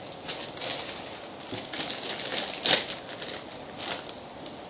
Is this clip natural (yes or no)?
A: yes